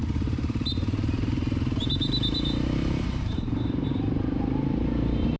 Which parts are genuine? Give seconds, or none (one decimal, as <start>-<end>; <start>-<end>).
none